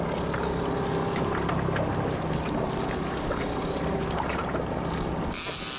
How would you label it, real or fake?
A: real